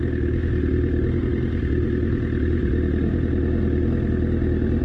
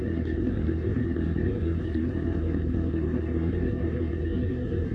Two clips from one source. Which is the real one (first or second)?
first